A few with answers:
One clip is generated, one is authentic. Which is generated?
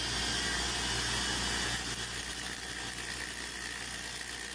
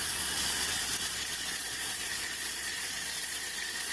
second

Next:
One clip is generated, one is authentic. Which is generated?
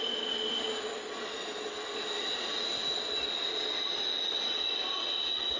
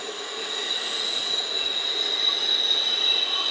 second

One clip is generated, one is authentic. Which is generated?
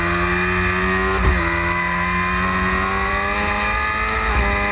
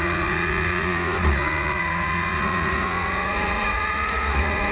second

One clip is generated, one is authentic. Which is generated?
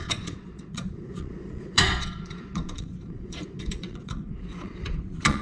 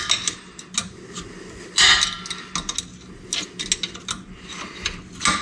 first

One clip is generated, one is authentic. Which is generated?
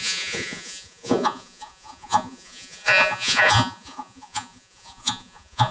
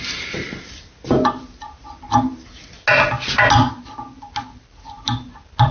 first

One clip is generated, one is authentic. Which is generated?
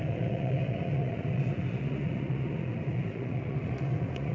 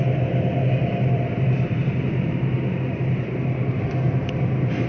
first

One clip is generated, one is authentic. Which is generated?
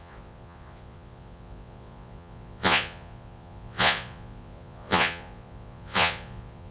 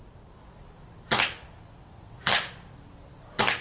first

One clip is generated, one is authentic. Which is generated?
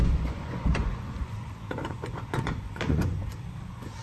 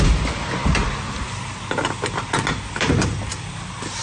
first